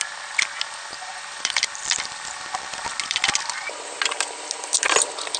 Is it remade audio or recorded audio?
remade